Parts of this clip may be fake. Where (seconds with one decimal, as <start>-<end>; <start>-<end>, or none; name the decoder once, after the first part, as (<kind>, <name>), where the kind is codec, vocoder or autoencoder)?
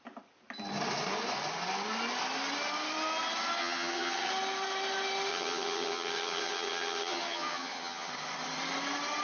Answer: 3.6-4.3 (vocoder, HiFi-GAN); 5.3-8.1